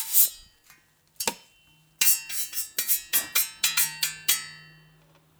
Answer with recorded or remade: recorded